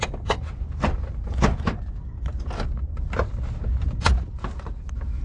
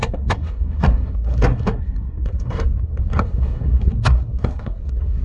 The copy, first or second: second